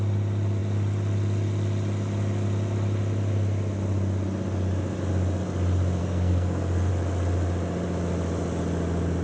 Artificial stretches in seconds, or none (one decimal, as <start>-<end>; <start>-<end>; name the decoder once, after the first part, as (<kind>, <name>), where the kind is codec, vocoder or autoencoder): 6.0-6.9 (codec, SNAC)